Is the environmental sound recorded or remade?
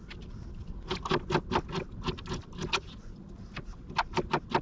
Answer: recorded